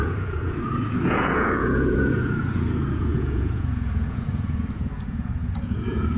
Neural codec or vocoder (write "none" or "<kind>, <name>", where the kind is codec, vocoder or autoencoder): vocoder, Vocos